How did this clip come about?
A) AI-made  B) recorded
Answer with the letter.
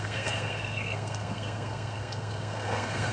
A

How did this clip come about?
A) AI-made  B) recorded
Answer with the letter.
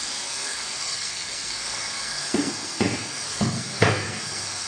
A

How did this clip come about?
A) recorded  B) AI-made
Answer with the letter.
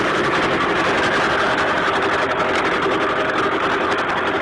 A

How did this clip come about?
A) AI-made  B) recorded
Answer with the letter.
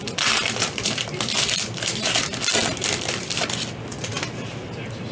B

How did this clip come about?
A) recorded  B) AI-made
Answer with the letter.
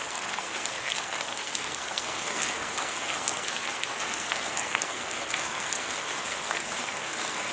B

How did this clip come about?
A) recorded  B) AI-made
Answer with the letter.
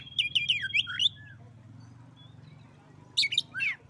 A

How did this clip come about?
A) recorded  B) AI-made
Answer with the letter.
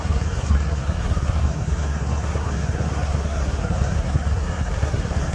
B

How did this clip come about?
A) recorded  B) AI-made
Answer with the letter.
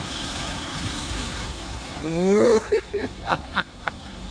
B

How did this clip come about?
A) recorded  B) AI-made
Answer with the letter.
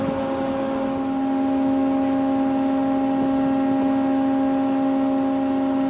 A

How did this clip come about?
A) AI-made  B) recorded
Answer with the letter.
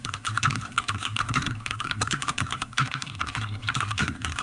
A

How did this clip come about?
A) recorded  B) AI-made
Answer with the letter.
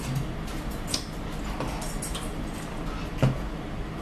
A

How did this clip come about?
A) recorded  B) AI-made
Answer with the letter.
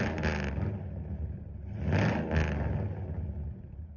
A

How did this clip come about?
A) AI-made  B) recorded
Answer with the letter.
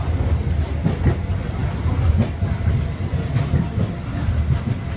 B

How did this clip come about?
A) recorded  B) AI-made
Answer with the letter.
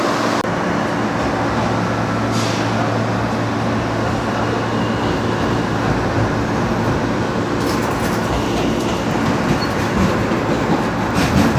A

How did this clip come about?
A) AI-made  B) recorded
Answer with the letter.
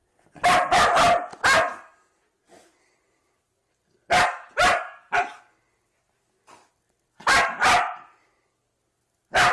B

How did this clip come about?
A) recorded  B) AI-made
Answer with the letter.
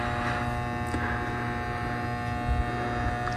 A